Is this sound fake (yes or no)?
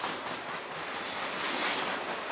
no